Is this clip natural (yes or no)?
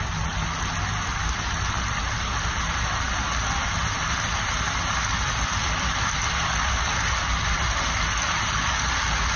yes